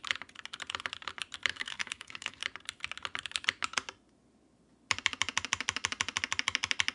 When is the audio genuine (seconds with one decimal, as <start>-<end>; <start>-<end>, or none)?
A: 0.0-1.5; 2.4-6.9